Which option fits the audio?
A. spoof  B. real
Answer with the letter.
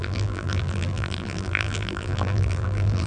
A